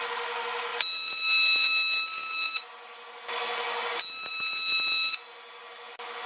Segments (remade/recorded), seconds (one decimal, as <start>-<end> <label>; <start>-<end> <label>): 0.0-6.3 recorded